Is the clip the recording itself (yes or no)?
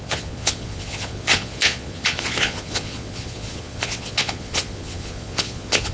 no